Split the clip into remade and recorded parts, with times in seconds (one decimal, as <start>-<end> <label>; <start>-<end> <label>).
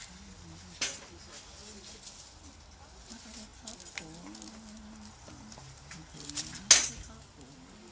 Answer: 0.0-7.9 recorded